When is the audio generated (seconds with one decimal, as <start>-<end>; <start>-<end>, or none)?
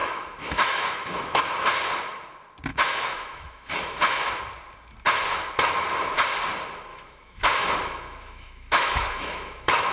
0.0-1.4; 2.7-4.3; 6.9-9.9